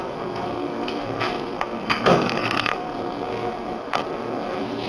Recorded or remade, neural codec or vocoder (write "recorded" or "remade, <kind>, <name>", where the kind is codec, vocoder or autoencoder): remade, codec, SNAC